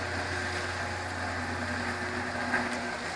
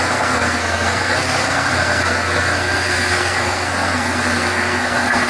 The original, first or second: first